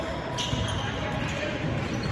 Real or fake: real